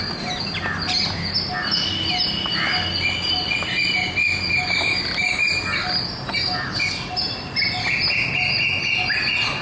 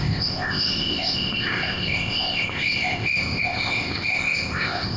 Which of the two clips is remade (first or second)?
second